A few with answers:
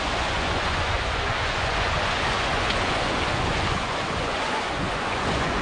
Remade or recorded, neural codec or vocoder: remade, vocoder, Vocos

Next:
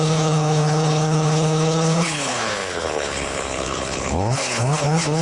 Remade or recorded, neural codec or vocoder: remade, codec, HILCodec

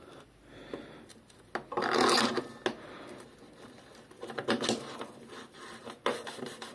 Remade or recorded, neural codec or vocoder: recorded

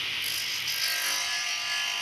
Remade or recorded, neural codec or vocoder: recorded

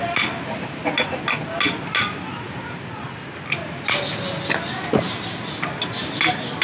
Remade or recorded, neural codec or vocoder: recorded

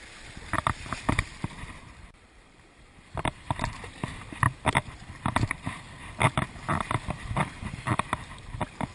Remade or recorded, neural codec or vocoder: remade, vocoder, BigVGAN v2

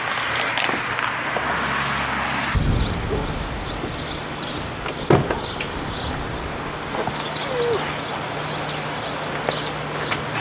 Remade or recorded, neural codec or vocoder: recorded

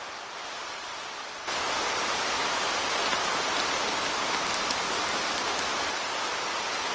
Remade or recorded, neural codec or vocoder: recorded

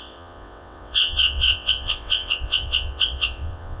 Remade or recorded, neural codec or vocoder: remade, vocoder, WaveNeXt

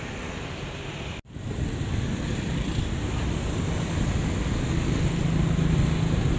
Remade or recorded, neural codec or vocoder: recorded